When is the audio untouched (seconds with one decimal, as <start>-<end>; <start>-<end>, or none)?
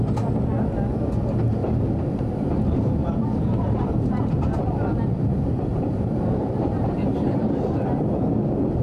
0.0-1.6; 4.2-5.7; 7.4-8.8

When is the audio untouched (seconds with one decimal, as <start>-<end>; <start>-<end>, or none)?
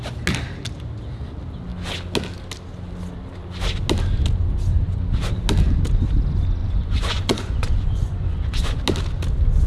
0.0-6.6; 8.8-9.7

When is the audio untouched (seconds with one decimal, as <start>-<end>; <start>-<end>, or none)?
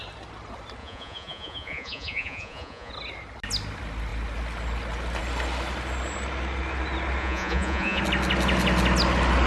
0.0-0.8; 2.9-7.2; 8.0-9.5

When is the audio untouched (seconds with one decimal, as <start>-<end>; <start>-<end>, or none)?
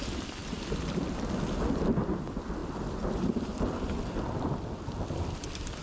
0.0-0.4; 0.9-2.6